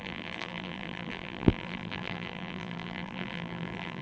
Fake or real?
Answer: fake